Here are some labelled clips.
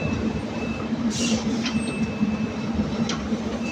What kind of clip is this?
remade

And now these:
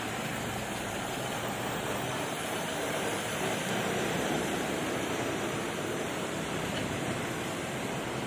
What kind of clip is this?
remade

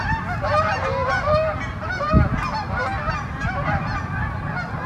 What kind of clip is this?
recorded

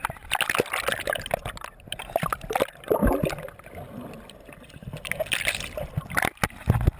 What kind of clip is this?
recorded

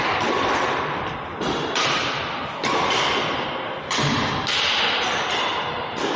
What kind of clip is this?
recorded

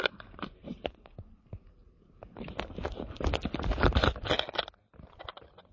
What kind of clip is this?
recorded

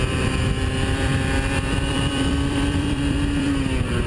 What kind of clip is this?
remade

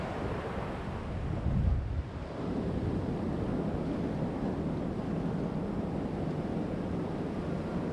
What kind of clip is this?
recorded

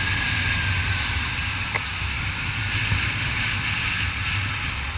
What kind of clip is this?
recorded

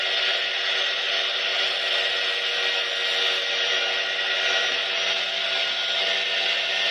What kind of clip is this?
recorded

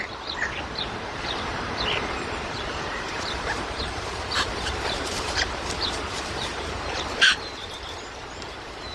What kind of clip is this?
remade